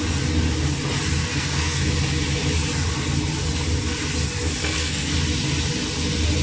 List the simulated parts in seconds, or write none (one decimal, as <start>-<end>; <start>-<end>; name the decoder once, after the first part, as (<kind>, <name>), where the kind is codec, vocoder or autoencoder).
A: 1.2-1.8 (codec, SNAC); 4.6-5.1